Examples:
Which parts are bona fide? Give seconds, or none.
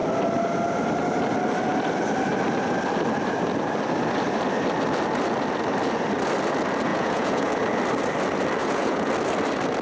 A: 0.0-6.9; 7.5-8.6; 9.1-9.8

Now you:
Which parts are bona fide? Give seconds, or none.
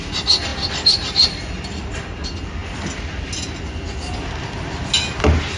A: 0.0-5.6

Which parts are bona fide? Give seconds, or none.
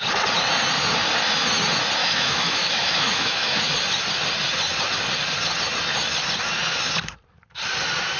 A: 0.0-2.0; 3.6-8.2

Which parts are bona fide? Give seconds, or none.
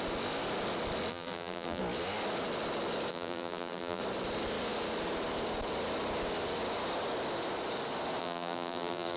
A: 0.0-1.1; 1.8-3.1; 4.0-8.2